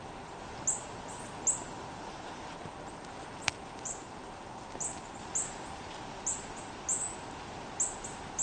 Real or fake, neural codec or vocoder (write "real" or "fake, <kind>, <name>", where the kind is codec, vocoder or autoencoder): real